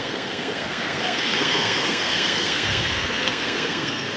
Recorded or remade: remade